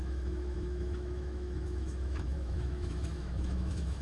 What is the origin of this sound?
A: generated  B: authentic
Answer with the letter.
A